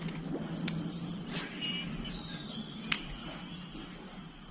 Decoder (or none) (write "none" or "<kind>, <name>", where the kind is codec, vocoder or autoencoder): none